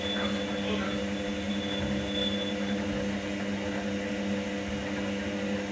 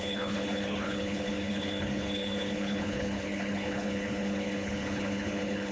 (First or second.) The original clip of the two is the first